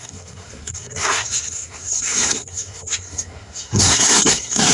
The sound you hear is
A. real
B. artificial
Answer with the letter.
B